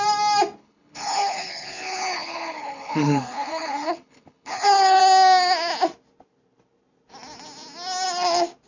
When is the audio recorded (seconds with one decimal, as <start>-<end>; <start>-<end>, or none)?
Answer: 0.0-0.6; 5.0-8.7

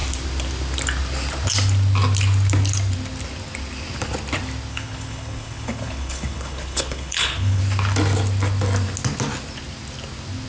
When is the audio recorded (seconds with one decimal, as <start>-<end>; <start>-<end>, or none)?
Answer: 0.0-4.7; 7.6-10.5

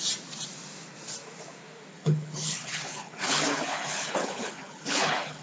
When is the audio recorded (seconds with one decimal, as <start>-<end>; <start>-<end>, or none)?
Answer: 0.0-1.9